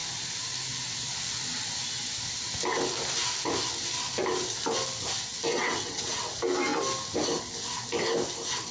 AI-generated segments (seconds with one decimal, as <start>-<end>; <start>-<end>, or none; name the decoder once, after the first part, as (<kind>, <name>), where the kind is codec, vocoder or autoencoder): 5.5-6.3 (vocoder, WaveNeXt)